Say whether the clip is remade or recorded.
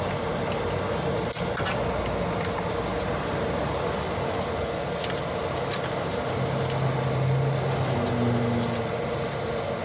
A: recorded